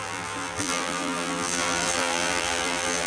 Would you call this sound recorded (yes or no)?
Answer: no